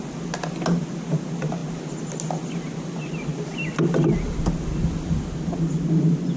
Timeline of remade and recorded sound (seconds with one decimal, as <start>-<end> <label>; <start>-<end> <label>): 0.0-6.4 recorded